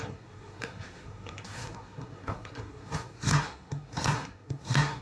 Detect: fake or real fake